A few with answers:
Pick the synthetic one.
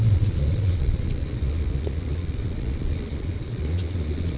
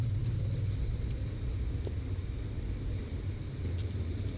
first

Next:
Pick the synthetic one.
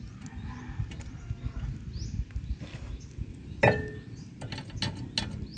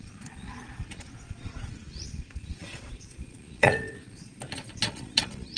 second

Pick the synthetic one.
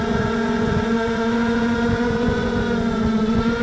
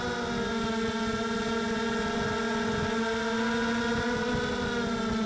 first